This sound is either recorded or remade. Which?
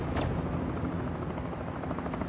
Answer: recorded